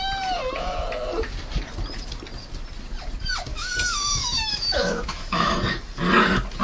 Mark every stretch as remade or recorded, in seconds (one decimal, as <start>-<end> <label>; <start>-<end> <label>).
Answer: 0.0-3.5 recorded; 3.5-5.6 remade; 5.6-6.6 recorded